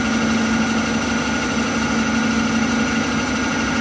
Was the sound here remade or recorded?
recorded